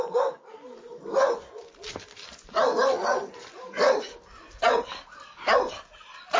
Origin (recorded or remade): recorded